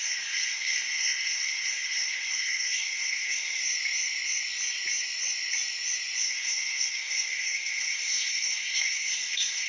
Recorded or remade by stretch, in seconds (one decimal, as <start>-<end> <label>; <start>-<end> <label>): 0.0-3.6 remade; 3.6-6.2 recorded; 6.2-9.7 remade